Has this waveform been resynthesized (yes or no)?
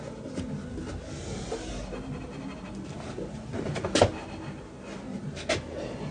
no